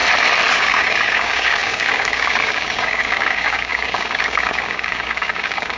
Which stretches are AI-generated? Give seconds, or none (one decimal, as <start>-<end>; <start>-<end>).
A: 0.5-5.8